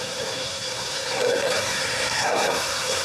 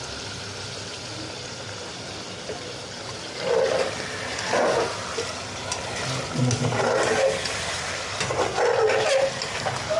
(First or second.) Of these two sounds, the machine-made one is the first